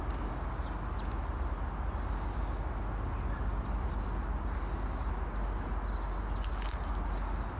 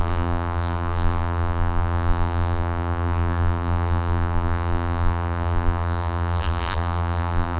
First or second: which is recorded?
first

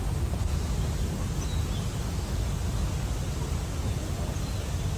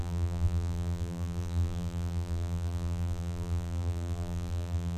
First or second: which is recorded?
first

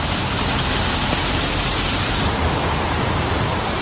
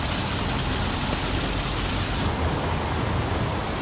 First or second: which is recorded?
second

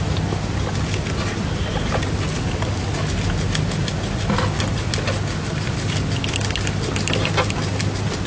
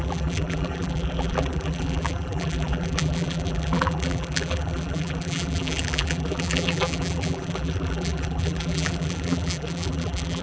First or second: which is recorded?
first